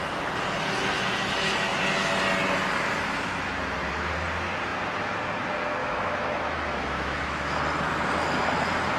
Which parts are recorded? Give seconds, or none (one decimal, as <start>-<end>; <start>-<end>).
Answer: 0.0-5.8; 7.6-9.0